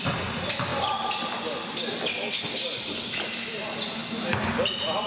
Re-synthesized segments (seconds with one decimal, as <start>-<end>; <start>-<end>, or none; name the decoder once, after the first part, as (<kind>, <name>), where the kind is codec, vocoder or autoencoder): none